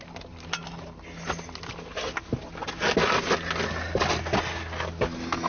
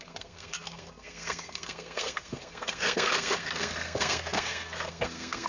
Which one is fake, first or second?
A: second